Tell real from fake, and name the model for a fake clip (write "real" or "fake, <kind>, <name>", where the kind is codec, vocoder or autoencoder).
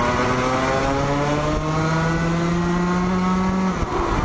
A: real